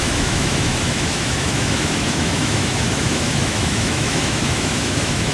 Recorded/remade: remade